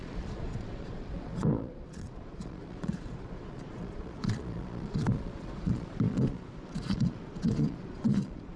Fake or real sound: fake